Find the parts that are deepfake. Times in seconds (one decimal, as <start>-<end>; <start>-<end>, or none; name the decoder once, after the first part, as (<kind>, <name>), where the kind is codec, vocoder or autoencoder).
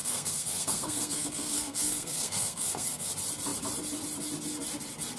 0.0-3.1 (codec, SNAC)